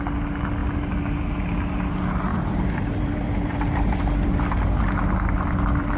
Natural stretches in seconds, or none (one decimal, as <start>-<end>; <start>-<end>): 0.0-2.3; 4.1-6.0